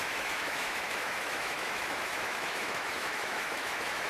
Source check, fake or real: fake